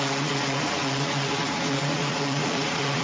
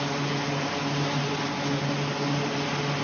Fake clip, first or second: first